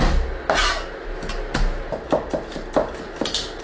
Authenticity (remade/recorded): recorded